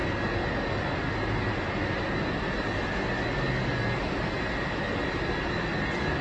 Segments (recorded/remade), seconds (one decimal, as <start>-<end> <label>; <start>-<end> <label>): 0.0-6.2 recorded